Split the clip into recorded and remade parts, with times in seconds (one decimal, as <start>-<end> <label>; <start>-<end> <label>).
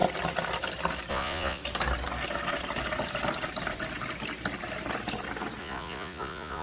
0.0-1.1 recorded; 1.1-1.6 remade; 1.6-5.6 recorded; 5.6-6.6 remade